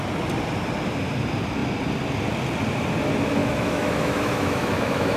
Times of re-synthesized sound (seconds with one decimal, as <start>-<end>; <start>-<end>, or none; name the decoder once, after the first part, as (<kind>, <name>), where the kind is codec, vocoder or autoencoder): 3.4-5.2 (autoencoder, DAC-VAE)